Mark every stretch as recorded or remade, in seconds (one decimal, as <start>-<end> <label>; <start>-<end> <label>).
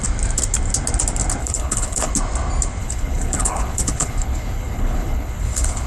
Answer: 0.0-1.4 recorded; 1.4-2.1 remade; 2.1-2.8 recorded; 2.8-5.9 remade